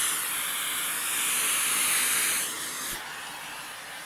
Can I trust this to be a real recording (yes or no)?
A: yes